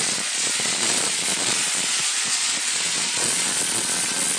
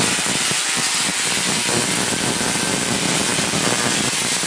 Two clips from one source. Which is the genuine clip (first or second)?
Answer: second